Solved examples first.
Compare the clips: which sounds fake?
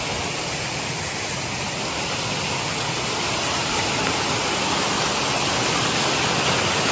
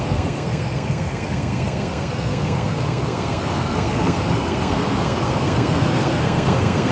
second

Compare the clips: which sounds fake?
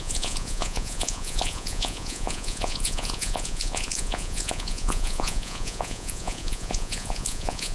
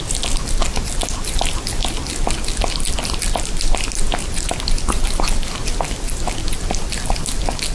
first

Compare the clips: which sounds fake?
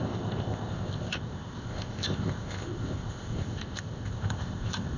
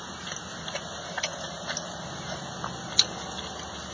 first